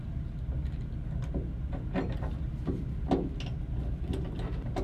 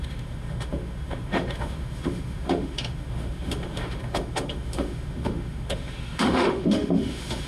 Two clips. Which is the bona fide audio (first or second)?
first